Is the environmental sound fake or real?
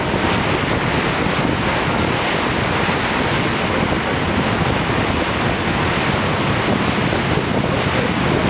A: real